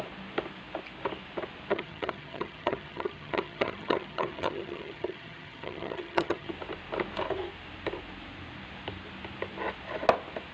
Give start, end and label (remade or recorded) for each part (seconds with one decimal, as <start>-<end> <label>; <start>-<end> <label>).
0.0-1.7 recorded; 1.7-6.5 remade; 6.5-10.5 recorded